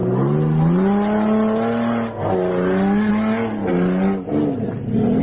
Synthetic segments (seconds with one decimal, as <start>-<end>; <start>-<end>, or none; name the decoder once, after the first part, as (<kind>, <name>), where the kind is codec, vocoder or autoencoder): none